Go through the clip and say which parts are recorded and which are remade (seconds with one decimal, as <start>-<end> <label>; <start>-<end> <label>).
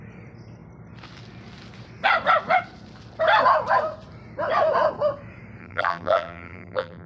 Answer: 0.0-5.6 recorded; 5.6-7.1 remade